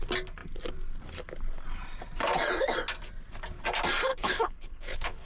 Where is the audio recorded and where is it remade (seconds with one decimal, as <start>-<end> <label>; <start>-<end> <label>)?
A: 0.0-4.1 recorded; 4.1-5.3 remade